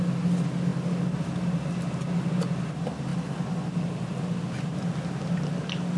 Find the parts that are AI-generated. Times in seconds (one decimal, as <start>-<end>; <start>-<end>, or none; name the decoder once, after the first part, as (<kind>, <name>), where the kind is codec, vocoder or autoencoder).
none